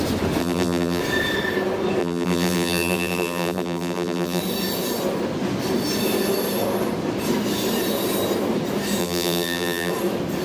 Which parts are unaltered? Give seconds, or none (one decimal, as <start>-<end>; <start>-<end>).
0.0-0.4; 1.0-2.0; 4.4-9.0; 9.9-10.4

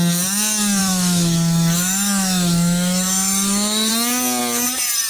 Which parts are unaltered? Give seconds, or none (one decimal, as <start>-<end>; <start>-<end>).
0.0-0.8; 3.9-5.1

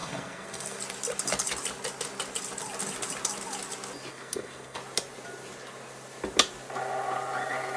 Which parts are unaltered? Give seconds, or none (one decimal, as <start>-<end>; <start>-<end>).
0.8-4.1; 4.8-7.8